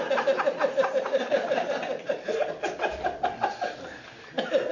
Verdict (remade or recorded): recorded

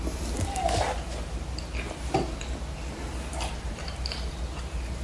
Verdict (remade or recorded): remade